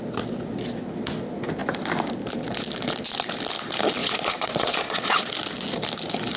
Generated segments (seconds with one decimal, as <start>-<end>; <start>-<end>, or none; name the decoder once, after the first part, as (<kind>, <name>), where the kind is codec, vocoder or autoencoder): 4.0-5.3 (vocoder, Vocos)

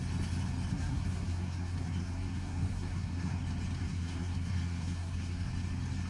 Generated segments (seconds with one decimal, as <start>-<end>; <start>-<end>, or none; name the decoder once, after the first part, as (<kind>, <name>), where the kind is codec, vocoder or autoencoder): 0.7-3.4 (codec, SNAC); 3.8-5.5

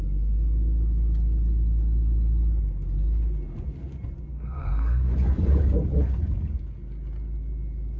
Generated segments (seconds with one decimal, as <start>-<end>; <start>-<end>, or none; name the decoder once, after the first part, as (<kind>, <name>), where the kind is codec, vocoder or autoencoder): 4.3-5.1 (codec, SNAC)

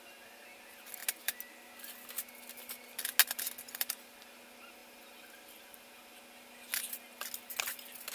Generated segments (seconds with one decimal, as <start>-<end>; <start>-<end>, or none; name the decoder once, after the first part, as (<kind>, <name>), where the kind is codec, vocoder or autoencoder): 4.8-6.2 (vocoder, BigVGAN v2)

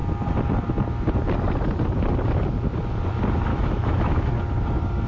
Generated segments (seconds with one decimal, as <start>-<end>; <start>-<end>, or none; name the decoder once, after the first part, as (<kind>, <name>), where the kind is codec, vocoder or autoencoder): 3.5-4.3 (autoencoder, DAC-VAE)

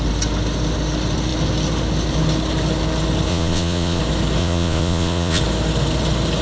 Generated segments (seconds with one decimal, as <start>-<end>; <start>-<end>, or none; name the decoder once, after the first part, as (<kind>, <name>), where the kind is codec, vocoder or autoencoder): 3.3-4.0 (vocoder, Vocos); 4.4-5.4

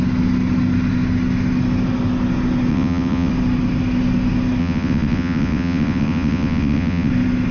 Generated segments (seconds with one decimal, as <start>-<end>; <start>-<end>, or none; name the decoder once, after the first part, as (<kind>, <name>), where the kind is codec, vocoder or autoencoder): 2.7-3.3 (vocoder, WaveNeXt); 4.6-7.1